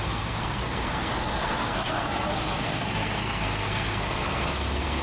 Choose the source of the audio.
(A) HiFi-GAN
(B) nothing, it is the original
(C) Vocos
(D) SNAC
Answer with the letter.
D